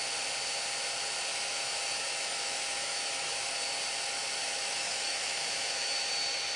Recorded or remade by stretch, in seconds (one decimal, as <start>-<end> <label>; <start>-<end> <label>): 0.0-1.3 recorded; 1.3-3.5 remade; 3.5-4.4 recorded; 4.4-6.1 remade; 6.1-6.6 recorded